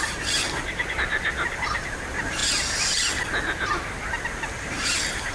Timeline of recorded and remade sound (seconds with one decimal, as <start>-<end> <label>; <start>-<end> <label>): 0.0-5.3 recorded